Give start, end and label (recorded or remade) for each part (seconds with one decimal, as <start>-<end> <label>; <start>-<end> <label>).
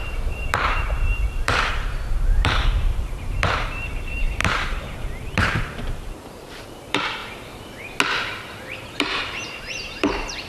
0.0-7.2 remade; 7.2-8.8 recorded; 8.8-10.5 remade